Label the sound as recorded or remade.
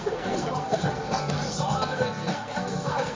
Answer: remade